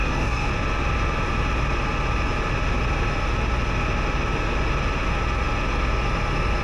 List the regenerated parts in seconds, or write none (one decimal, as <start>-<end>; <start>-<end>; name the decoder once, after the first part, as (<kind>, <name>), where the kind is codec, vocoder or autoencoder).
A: 0.0-0.5 (codec, DAC)